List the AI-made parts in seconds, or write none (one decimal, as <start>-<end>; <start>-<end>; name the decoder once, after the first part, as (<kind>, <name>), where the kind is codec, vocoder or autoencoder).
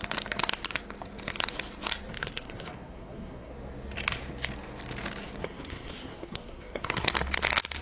2.2-3.5 (codec, SNAC); 5.4-7.1